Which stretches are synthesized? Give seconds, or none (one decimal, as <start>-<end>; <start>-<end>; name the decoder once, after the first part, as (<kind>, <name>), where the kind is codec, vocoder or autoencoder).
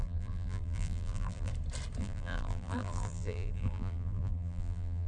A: 0.0-1.5 (vocoder, BigVGAN v2); 2.0-5.1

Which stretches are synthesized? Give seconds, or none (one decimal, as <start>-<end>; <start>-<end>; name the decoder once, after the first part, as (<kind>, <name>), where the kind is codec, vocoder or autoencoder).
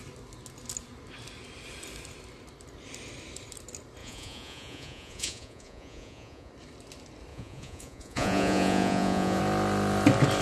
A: 4.0-6.5 (vocoder, Vocos); 7.3-9.4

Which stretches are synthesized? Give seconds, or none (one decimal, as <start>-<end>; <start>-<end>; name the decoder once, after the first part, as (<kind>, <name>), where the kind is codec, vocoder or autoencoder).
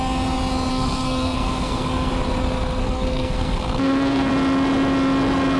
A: 0.7-2.1 (codec, SNAC); 2.8-4.3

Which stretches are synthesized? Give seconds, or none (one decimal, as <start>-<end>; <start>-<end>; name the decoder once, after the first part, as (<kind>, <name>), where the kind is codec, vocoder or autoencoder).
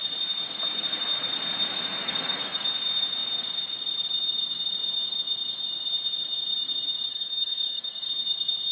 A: 2.0-2.7 (codec, DAC); 7.1-8.1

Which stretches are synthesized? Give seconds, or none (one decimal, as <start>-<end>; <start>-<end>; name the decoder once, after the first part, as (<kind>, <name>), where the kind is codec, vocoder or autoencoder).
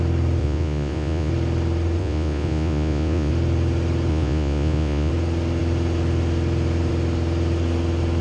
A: 0.4-1.3 (vocoder, Vocos); 2.0-3.3; 4.1-5.1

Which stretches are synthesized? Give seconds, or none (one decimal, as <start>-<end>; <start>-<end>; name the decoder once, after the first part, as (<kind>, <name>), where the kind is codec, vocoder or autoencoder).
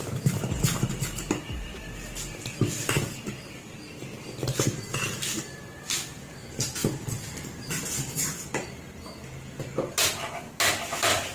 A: none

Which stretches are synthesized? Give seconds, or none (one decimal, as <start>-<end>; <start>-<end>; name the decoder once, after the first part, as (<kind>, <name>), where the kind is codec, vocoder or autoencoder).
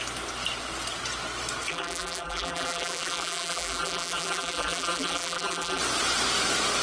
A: 1.7-5.8 (vocoder, BigVGAN v2)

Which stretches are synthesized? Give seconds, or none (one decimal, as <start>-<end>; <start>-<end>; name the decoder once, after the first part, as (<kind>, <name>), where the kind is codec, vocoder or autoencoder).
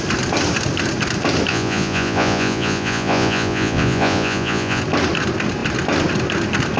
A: 1.5-4.8 (vocoder, Vocos)